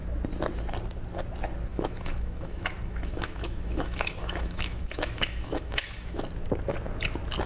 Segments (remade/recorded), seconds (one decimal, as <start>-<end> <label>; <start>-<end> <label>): 0.0-1.7 recorded; 1.7-6.2 remade; 6.2-7.5 recorded